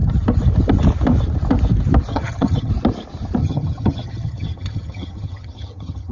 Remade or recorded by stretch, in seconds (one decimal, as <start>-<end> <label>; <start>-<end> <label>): 0.0-2.1 recorded; 2.1-2.7 remade; 2.7-3.4 recorded; 3.4-6.1 remade